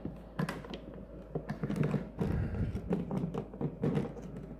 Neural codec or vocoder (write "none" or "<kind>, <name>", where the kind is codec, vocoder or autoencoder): none